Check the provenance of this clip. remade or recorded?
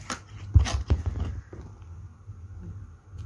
recorded